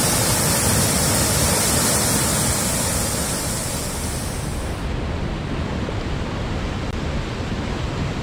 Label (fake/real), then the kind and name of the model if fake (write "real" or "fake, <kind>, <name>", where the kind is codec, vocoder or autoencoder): real